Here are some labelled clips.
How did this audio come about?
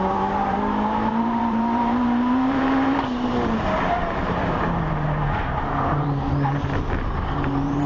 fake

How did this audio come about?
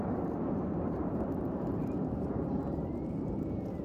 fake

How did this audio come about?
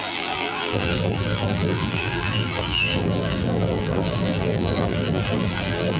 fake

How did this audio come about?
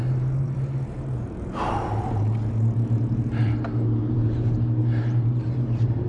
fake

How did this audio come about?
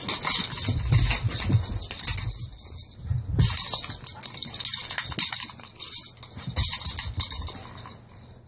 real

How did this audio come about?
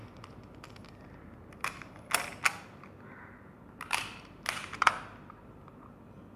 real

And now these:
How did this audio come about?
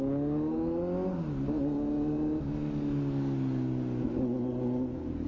real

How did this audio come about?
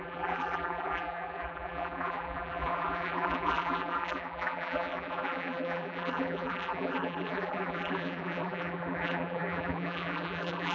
fake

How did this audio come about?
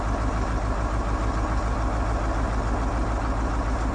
real